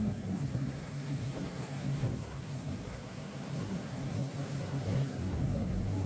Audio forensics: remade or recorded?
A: remade